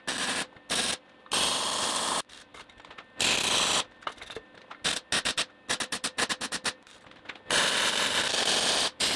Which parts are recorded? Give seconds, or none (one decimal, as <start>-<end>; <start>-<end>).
0.0-9.2